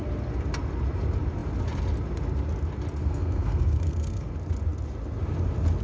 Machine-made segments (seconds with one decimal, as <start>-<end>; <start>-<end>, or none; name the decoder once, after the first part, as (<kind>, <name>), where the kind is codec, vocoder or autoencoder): 3.0-4.3 (codec, SNAC)